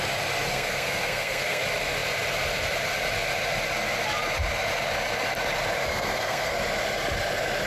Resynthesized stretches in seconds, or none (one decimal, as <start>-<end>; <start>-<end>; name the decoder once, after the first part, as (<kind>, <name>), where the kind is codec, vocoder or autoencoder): 0.5-1.6 (codec, SNAC); 5.9-6.5